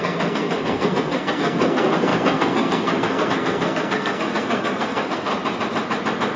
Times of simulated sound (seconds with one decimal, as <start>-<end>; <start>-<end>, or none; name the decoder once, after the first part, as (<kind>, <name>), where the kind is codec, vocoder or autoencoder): 0.0-5.3 (codec, SNAC)